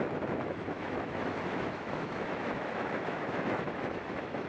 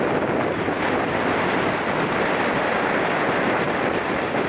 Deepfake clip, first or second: first